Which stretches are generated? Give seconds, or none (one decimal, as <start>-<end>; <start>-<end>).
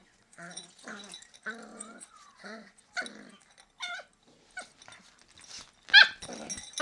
0.0-1.0; 1.7-2.8